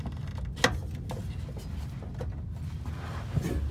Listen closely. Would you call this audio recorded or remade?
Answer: recorded